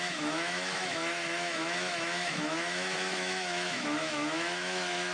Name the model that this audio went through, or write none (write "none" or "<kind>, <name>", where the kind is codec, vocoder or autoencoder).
autoencoder, DAC-VAE